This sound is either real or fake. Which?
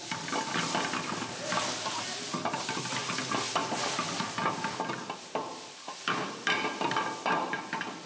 real